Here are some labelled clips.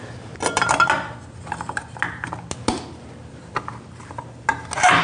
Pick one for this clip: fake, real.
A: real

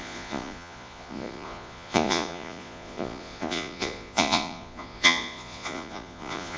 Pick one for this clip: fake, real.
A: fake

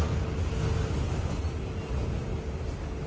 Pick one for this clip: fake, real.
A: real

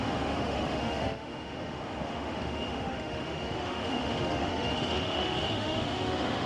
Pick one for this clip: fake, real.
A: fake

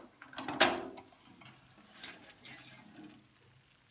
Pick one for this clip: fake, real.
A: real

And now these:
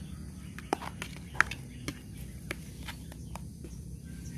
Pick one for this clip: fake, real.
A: real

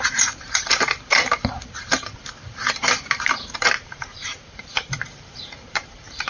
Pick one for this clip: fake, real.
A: fake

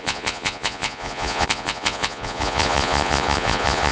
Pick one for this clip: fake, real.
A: fake